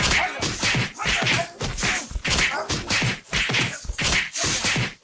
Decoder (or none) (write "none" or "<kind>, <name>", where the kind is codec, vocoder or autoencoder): none